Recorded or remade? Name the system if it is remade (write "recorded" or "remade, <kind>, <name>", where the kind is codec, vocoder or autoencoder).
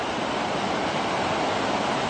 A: recorded